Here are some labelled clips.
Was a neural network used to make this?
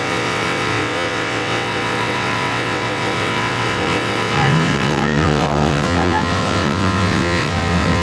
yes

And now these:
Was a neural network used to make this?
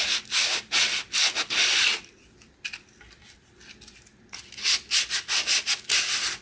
no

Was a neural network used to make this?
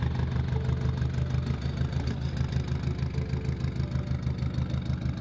no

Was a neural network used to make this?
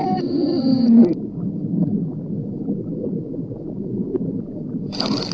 no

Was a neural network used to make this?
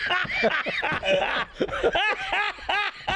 no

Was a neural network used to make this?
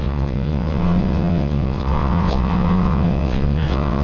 yes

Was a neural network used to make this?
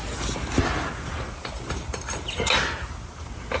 no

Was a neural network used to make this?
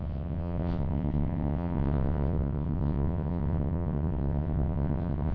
yes